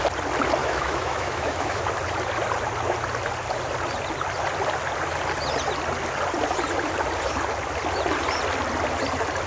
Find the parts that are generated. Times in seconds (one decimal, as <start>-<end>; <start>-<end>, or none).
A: 0.6-1.8